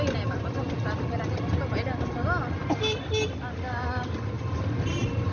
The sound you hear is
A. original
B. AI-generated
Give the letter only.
A